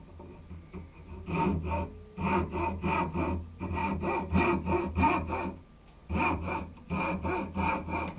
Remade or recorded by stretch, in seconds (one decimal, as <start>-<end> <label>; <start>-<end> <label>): 0.0-6.0 recorded; 6.0-6.6 remade; 6.6-8.2 recorded